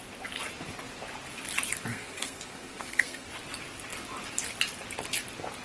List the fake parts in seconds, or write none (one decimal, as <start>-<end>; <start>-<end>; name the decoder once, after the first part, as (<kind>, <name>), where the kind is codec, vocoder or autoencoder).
1.9-3.3 (codec, SNAC)